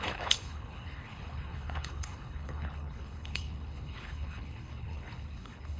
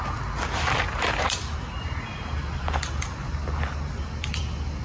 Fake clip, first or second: first